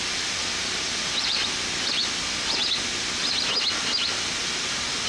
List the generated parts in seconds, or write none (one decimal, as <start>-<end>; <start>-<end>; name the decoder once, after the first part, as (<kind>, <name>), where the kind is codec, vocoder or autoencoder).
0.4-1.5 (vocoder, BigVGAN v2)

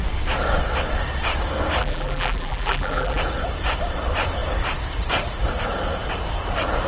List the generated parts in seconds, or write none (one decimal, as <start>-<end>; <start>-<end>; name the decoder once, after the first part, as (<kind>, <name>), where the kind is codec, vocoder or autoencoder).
1.8-3.2 (vocoder, BigVGAN v2)

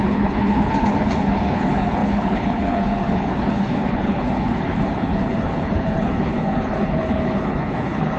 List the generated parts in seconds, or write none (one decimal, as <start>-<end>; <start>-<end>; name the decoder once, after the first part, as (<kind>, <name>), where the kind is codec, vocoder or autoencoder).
0.0-8.2 (codec, HILCodec)